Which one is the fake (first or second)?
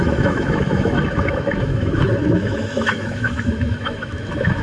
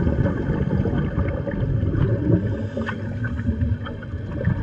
first